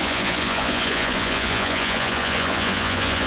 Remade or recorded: remade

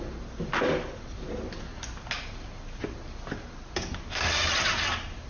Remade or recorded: recorded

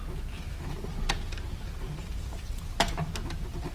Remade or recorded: recorded